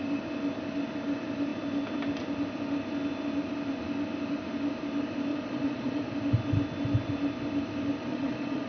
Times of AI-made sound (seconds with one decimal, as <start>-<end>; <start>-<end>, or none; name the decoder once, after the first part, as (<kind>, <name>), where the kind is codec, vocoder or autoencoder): 5.3-6.0 (vocoder, Vocos); 8.1-8.7

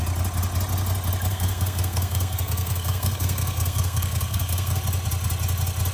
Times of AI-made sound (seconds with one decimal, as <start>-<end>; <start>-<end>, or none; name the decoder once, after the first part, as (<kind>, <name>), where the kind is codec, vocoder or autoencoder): 1.3-4.8 (codec, SNAC)

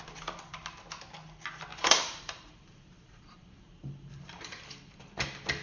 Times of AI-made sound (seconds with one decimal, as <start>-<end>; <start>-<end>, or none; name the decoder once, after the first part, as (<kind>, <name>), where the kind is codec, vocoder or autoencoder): 1.7-5.1 (vocoder, BigVGAN v2)

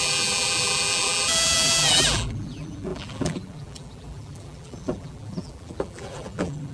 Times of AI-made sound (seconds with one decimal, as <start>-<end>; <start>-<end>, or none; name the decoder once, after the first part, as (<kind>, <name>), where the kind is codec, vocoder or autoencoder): 0.0-6.7 (vocoder, BigVGAN v2)

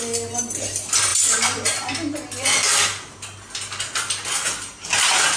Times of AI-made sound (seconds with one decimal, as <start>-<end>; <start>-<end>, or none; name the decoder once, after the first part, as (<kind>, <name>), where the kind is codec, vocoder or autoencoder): none

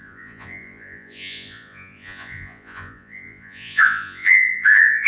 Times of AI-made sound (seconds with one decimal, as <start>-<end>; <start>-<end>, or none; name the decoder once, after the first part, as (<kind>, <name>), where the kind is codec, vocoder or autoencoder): 0.0-5.1 (vocoder, Vocos)

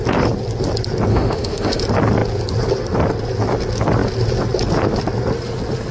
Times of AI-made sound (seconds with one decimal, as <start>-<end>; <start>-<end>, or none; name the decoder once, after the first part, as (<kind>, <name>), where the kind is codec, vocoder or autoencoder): 1.1-1.8 (autoencoder, DAC-VAE)